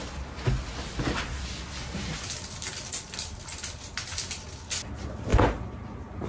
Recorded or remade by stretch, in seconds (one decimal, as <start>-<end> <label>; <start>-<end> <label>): 0.0-6.3 recorded